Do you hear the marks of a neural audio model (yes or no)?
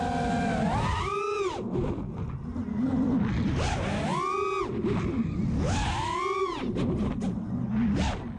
no